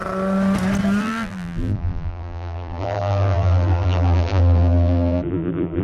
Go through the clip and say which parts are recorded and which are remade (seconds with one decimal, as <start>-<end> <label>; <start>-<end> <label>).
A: 0.0-1.0 recorded; 1.0-5.8 remade